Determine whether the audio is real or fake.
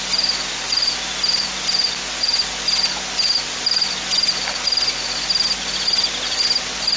real